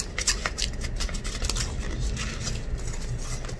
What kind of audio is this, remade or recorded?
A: recorded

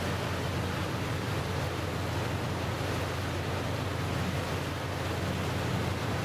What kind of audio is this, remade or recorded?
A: recorded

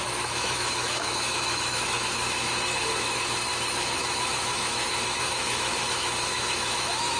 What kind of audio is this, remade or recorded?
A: remade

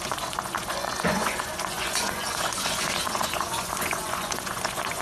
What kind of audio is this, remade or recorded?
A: remade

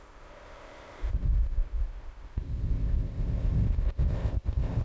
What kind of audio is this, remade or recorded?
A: remade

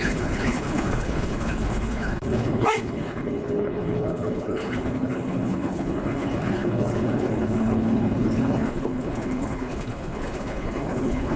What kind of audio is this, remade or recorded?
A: remade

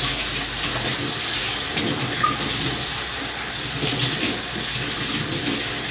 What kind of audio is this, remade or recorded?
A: recorded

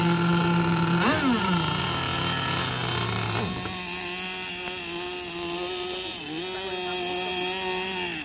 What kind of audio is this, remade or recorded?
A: recorded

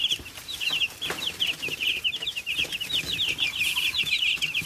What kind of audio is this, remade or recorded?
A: remade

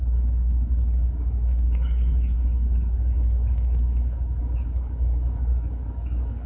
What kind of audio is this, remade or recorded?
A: remade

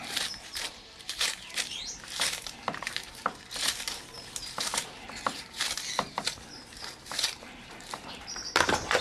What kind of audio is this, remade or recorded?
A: remade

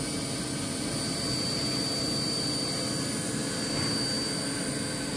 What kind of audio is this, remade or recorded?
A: recorded